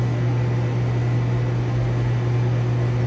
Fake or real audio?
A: real